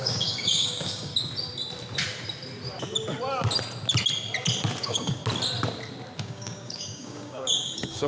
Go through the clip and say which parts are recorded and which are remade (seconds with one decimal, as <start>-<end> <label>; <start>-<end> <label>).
0.0-1.1 remade; 1.1-4.8 recorded; 4.8-5.2 remade; 5.2-6.2 recorded; 6.2-8.1 remade